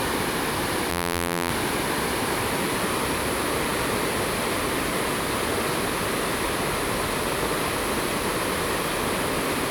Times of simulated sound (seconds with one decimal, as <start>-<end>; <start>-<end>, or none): 0.9-1.5

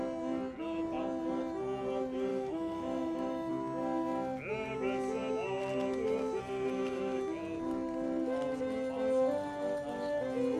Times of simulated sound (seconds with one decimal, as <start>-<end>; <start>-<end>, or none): 2.3-3.5

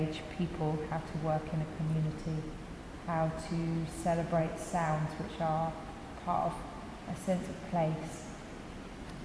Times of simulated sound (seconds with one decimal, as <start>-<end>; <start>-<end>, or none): 4.4-4.9

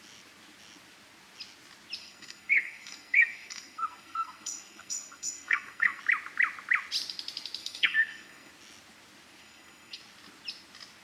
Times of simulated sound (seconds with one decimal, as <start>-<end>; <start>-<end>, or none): 2.0-6.0; 7.6-8.5; 9.4-10.0

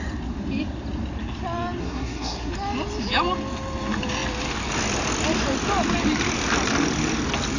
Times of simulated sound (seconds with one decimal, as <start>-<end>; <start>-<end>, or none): 1.8-2.5

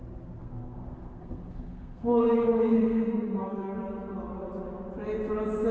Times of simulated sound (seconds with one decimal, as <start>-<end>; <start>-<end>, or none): 0.4-3.8

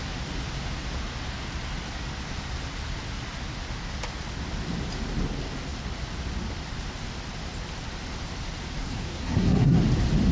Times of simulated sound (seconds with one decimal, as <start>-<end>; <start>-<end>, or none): 8.8-9.8

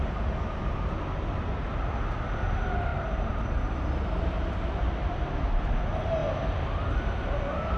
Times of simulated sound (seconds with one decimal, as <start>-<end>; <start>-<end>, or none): 2.9-4.1